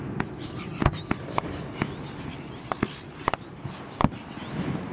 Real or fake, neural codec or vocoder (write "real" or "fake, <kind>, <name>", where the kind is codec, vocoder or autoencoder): real